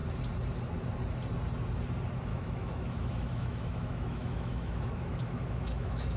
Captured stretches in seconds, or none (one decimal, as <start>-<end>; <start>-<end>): 0.0-2.3